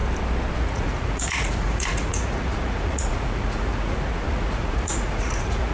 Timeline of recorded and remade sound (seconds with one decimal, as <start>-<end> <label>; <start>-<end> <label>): 0.0-0.6 recorded; 0.6-5.7 remade